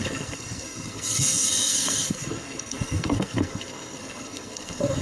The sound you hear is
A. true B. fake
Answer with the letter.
B